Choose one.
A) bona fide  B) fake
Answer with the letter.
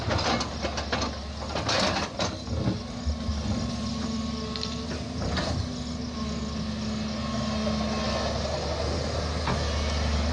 A